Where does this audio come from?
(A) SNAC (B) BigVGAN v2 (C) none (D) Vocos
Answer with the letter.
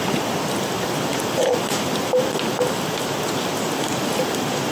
C